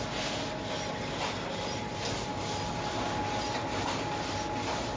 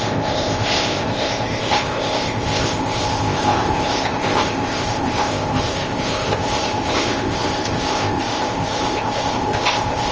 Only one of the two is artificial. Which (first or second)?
second